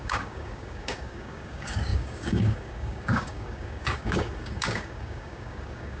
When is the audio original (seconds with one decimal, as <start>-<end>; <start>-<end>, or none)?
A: none